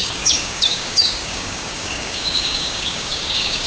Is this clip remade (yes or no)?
yes